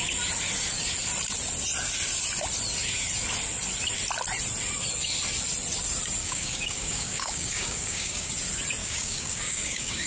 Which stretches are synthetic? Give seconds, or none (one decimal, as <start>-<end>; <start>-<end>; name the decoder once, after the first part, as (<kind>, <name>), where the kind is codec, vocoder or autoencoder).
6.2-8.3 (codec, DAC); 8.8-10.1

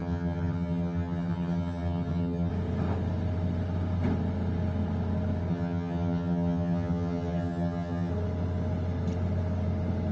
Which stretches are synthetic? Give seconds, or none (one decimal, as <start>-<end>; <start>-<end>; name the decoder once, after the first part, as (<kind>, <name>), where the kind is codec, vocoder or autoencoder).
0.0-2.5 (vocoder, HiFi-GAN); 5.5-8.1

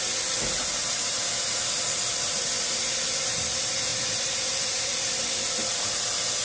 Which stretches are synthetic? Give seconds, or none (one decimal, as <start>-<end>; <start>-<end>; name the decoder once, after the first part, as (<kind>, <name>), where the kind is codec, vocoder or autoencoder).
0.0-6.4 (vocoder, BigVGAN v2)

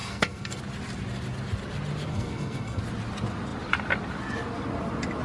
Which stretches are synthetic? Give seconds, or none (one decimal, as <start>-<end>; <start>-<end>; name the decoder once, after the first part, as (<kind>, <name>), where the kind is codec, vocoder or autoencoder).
0.0-0.6 (codec, SNAC); 2.1-2.8

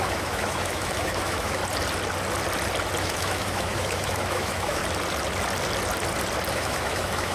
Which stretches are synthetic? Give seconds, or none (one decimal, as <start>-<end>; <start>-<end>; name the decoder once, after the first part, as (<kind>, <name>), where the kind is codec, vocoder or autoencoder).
0.0-1.6 (autoencoder, DAC-VAE); 3.0-4.8; 6.5-7.3